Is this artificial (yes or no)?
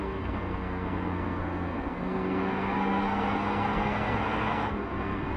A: yes